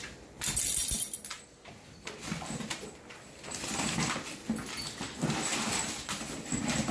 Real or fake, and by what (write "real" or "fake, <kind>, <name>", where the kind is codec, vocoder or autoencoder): real